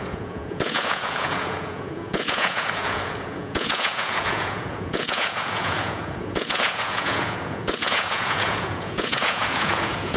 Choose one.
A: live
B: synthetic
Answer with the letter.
B